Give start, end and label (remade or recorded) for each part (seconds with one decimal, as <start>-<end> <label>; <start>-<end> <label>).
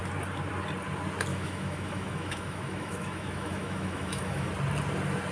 0.0-1.3 recorded; 1.3-4.5 remade; 4.5-5.3 recorded